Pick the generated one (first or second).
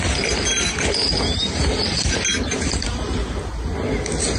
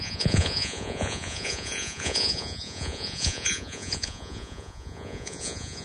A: second